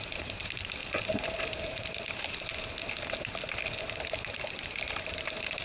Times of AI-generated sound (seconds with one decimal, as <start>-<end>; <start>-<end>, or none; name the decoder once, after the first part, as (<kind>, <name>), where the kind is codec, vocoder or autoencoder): 0.0-0.8 (vocoder, BigVGAN v2); 1.5-2.5; 4.3-5.6